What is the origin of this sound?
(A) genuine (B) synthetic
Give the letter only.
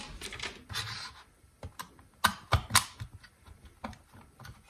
A